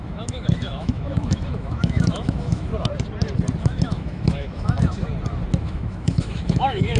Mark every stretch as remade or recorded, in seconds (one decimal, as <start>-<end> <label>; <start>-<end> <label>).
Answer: 0.0-2.7 remade; 2.7-3.6 recorded; 3.6-5.1 remade; 5.1-5.6 recorded; 5.6-7.0 remade